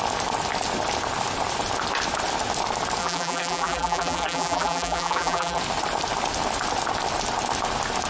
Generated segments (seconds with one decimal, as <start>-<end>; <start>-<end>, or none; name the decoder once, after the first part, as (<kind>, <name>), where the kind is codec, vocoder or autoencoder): 3.0-5.6 (vocoder, BigVGAN v2)